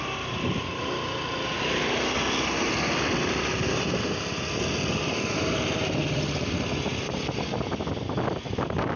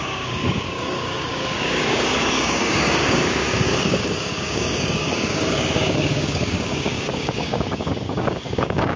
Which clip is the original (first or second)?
first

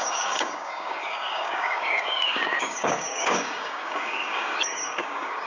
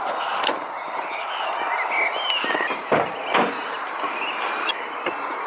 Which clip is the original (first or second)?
second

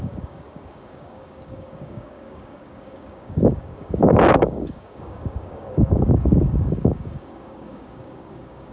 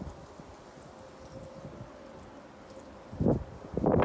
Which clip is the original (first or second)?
second